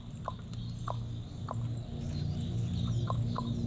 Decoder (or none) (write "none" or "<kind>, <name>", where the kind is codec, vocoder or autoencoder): none